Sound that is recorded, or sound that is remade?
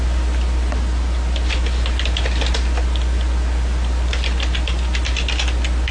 recorded